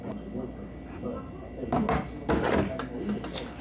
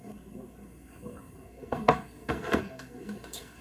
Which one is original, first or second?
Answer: first